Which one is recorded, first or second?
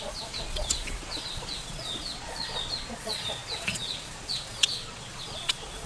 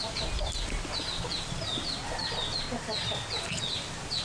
second